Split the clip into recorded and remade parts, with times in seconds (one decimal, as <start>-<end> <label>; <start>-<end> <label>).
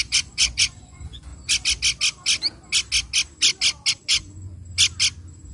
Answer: 0.0-1.3 remade; 1.3-3.9 recorded; 3.9-4.5 remade; 4.5-5.5 recorded